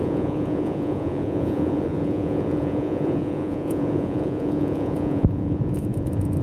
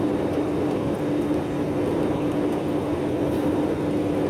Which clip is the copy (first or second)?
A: first